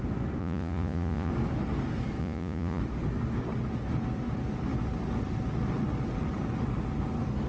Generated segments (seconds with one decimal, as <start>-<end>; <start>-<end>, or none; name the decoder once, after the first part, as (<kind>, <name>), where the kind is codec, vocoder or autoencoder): 0.4-1.3 (vocoder, Vocos); 2.2-2.8